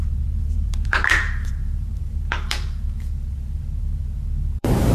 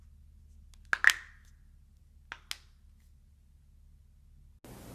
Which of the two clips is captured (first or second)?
second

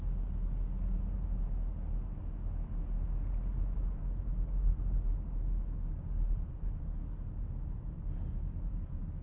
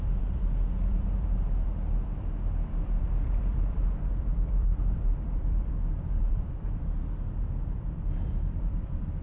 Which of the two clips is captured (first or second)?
first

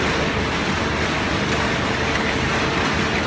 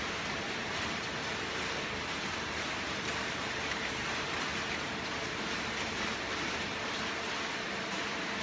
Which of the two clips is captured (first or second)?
first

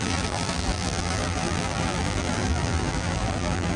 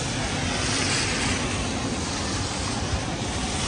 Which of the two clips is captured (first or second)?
second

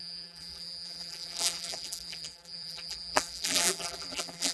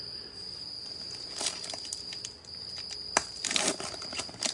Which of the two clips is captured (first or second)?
second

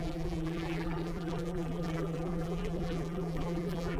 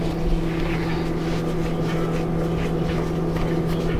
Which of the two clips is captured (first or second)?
second